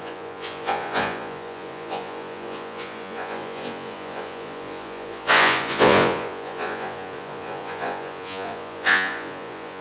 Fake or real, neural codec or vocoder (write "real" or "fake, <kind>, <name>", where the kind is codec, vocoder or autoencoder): fake, vocoder, Vocos